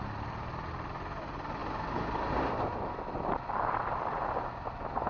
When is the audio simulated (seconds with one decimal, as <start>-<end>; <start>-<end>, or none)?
none